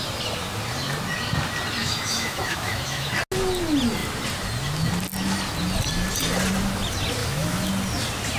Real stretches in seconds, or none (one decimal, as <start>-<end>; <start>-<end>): 0.0-1.8; 3.1-7.2; 7.7-8.4